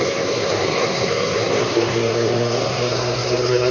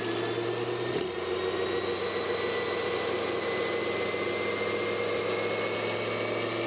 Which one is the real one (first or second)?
second